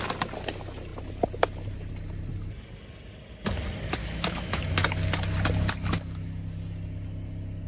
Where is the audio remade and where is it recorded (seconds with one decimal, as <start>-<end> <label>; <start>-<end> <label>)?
0.0-4.0 recorded; 4.0-4.7 remade; 4.7-7.7 recorded